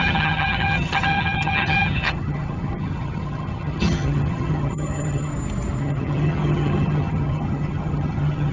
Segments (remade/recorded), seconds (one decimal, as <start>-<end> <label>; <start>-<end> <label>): 0.0-5.3 remade; 5.3-5.8 recorded; 5.8-8.5 remade